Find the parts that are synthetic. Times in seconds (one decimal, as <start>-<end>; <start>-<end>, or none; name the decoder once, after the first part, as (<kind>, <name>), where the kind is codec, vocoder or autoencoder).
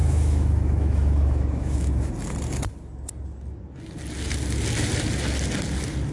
0.0-2.1 (autoencoder, DAC-VAE)